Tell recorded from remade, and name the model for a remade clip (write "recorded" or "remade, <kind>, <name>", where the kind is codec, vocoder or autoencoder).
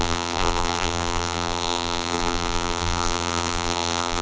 remade, vocoder, BigVGAN v2